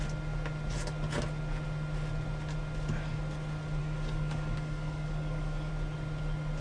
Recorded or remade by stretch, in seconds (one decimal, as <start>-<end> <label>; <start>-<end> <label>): 0.0-3.8 recorded; 3.8-5.7 remade; 5.7-6.6 recorded